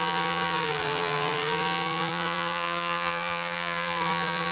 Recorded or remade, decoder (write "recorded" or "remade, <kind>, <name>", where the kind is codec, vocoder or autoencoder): remade, vocoder, BigVGAN v2